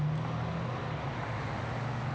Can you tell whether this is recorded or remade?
recorded